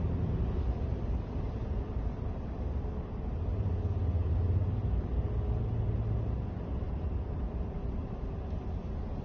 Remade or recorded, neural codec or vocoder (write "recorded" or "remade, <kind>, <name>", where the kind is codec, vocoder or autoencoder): recorded